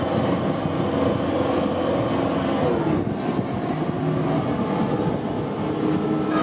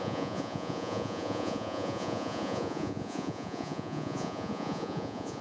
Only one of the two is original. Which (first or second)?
first